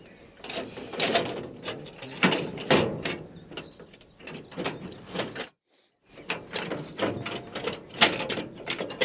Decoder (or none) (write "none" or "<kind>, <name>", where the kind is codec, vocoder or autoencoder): none